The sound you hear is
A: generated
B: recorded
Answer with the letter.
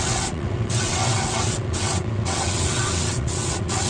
A